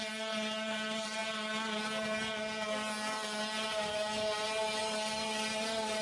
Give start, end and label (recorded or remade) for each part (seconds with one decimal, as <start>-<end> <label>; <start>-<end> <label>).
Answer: 0.0-6.0 recorded